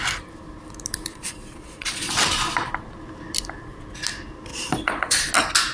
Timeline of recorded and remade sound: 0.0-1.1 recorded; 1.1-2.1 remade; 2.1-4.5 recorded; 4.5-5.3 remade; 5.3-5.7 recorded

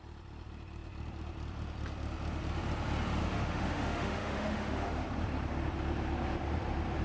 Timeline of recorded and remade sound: 0.0-3.2 recorded; 3.2-4.9 remade; 4.9-7.0 recorded

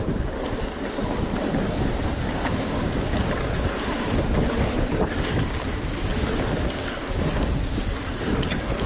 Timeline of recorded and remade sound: 0.0-1.0 remade; 1.0-1.8 recorded; 1.8-6.1 remade; 6.1-7.3 recorded; 7.3-8.9 remade

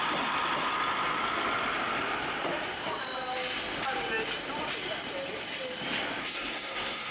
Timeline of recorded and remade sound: 0.0-6.2 recorded; 6.2-7.1 remade

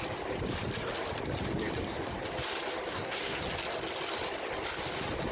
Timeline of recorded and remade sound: 0.0-2.9 recorded; 2.9-3.4 remade; 3.4-5.3 recorded